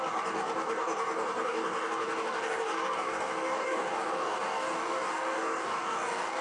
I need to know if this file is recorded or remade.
remade